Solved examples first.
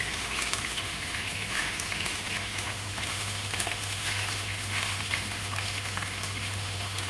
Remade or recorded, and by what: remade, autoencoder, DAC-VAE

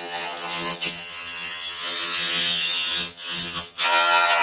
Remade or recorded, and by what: remade, vocoder, HiFi-GAN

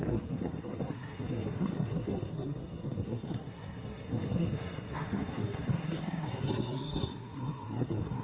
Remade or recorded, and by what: remade, codec, SNAC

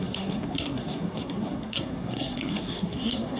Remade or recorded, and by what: remade, codec, SNAC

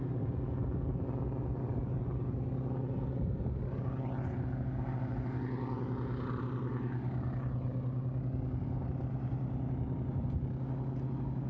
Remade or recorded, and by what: recorded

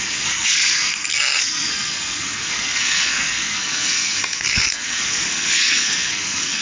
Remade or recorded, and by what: remade, codec, SNAC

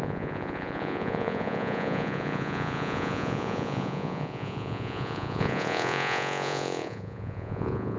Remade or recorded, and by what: remade, vocoder, Vocos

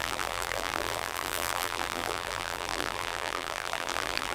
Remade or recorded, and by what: remade, vocoder, BigVGAN v2